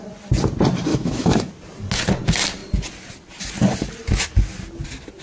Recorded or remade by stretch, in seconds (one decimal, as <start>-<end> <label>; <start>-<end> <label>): 0.0-0.9 recorded; 0.9-1.5 remade; 1.5-5.2 recorded